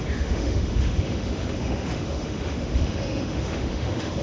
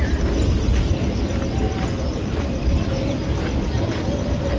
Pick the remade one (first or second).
first